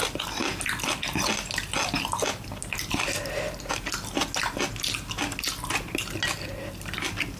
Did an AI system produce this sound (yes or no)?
no